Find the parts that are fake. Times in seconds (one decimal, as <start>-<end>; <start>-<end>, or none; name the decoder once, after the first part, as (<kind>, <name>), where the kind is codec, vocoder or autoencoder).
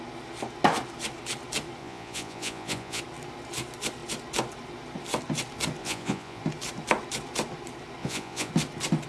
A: 1.8-3.0 (vocoder, Vocos); 5.8-6.4; 8.0-8.5